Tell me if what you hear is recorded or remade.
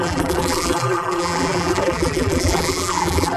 remade